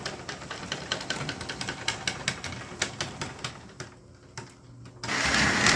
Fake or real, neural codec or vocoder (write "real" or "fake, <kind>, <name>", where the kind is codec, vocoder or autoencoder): real